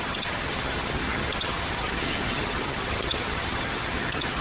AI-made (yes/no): yes